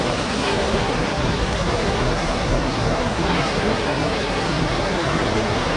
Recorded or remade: remade